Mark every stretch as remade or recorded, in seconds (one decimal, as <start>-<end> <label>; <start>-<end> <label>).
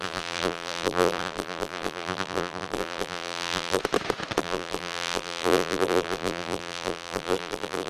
0.0-3.8 remade; 3.8-4.4 recorded; 4.4-7.9 remade